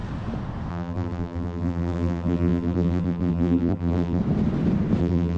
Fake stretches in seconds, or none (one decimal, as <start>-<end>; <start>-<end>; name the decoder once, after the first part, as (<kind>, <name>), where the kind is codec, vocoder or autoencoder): 0.7-4.2 (vocoder, BigVGAN v2); 5.0-5.4